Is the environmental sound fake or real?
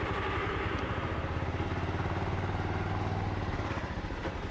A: real